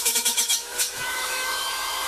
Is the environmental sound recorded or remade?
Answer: remade